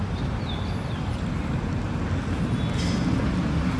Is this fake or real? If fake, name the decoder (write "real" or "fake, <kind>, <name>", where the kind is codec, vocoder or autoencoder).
real